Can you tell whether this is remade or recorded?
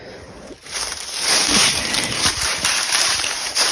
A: remade